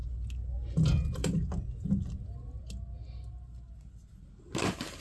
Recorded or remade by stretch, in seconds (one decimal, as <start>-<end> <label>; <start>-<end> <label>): 0.0-5.0 recorded